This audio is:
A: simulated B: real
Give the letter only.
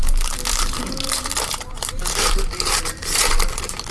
A